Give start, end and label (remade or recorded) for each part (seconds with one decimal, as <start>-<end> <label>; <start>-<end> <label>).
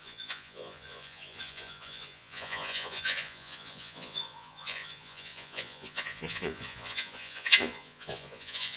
0.0-8.8 remade